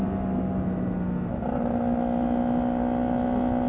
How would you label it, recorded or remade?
recorded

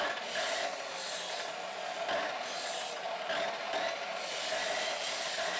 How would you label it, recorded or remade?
recorded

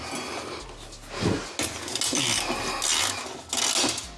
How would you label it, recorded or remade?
recorded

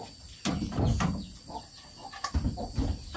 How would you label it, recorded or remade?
recorded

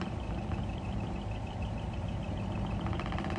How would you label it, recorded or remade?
recorded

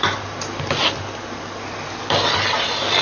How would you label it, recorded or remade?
recorded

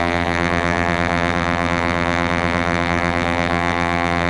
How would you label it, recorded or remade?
remade